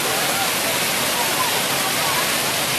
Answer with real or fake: real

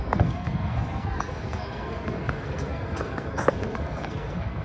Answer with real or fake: fake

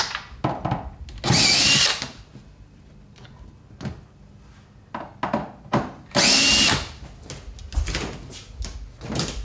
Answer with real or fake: real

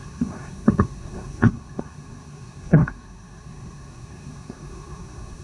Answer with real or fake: fake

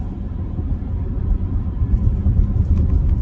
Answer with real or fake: real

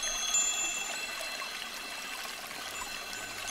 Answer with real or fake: real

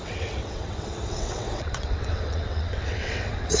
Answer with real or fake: fake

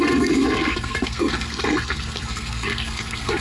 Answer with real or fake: fake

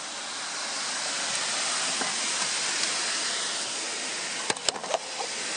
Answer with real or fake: real